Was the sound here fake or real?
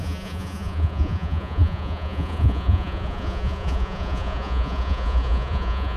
fake